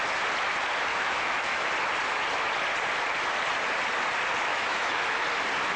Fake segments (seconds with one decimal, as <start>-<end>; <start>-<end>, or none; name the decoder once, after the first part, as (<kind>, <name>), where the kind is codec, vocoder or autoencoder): 0.9-1.7 (autoencoder, DAC-VAE); 4.5-5.2